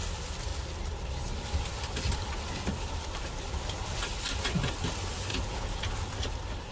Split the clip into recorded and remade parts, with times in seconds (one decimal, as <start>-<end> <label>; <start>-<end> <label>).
0.0-5.3 recorded; 5.3-5.9 remade; 5.9-6.7 recorded